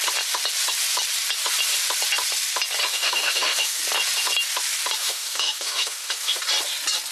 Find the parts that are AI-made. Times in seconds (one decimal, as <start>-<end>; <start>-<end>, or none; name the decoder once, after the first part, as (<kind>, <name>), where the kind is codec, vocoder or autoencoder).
2.9-3.8 (autoencoder, DAC-VAE); 5.0-6.4